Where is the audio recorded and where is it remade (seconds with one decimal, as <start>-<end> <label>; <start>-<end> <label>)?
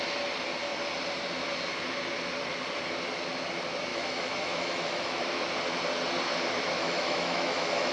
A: 0.0-3.9 recorded; 3.9-5.2 remade; 5.2-6.8 recorded; 6.8-7.9 remade